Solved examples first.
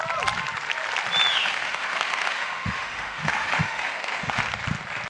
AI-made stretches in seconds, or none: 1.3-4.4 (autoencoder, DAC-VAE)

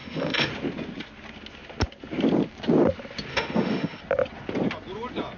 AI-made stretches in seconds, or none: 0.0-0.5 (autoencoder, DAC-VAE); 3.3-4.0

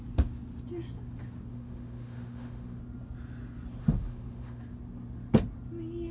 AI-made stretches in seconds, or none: 1.5-2.8 (autoencoder, DAC-VAE); 3.8-4.6